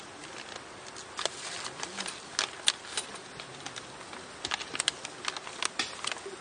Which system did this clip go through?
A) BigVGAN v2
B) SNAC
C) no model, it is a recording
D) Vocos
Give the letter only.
C